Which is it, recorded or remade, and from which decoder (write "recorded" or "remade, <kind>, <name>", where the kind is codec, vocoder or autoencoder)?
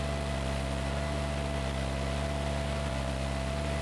recorded